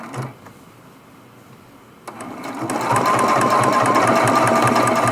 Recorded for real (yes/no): yes